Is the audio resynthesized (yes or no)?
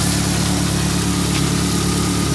no